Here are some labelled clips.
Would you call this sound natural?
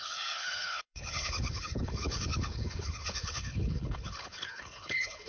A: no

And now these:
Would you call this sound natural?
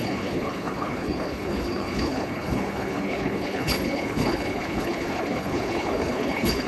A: no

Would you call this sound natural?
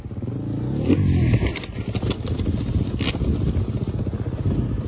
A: yes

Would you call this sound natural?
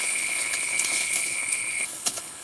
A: no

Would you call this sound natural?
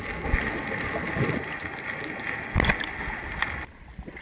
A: yes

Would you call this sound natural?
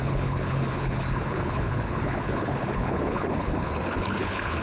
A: no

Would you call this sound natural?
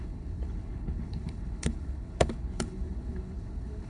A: no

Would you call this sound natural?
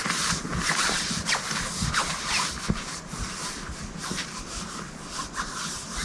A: yes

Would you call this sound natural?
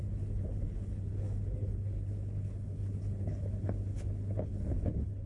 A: no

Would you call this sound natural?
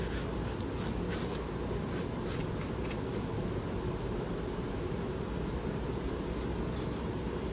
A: yes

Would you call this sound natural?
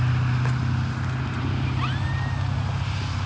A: yes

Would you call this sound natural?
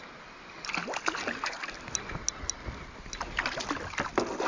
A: yes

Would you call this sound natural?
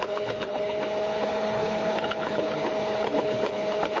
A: no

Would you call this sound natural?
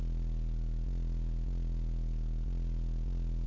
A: yes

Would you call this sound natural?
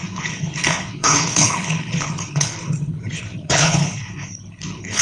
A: no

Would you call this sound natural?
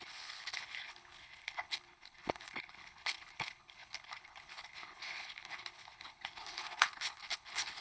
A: no